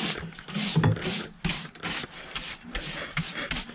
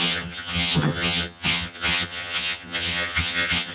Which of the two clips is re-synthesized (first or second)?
second